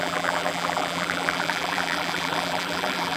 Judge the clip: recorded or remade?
remade